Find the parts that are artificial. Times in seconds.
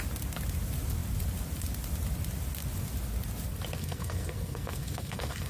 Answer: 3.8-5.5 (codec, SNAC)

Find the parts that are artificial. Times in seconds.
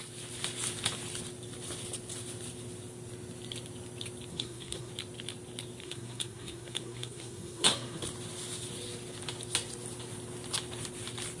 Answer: 4.3-4.9 (codec, SNAC); 5.8-8.0